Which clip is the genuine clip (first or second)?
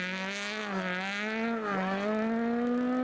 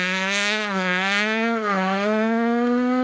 first